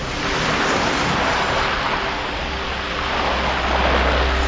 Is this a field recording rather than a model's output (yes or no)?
yes